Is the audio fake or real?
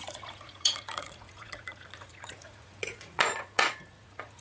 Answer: fake